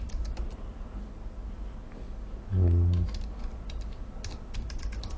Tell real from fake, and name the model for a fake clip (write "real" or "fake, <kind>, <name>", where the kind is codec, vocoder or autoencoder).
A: real